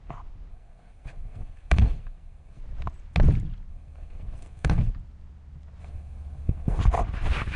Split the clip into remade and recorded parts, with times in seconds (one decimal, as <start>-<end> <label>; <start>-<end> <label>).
0.0-0.5 recorded; 0.5-2.6 remade; 2.6-3.7 recorded; 3.7-4.9 remade; 4.9-5.8 recorded; 5.8-6.8 remade; 6.8-7.6 recorded